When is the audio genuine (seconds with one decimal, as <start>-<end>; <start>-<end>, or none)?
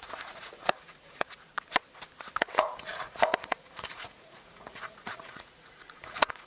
1.5-2.4